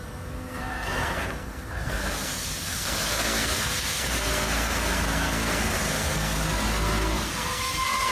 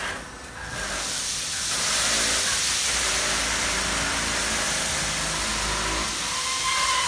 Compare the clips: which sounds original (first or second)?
second